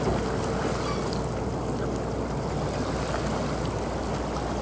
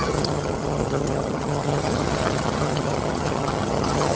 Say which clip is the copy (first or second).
second